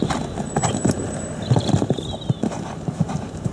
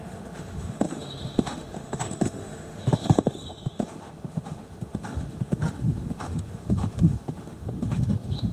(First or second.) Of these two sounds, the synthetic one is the second